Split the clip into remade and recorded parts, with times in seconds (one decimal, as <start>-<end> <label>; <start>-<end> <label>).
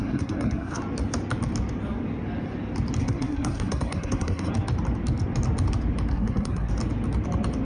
0.0-0.8 remade; 0.8-3.0 recorded; 3.0-4.5 remade; 4.5-6.1 recorded; 6.1-6.7 remade; 6.7-7.6 recorded